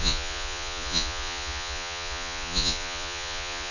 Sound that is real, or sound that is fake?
fake